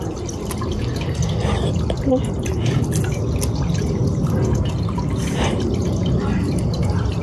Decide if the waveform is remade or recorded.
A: recorded